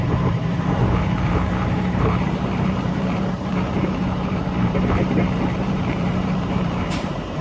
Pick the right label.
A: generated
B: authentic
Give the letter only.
A